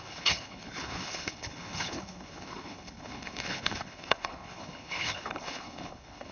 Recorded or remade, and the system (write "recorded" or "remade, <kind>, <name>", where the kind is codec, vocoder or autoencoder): remade, codec, HILCodec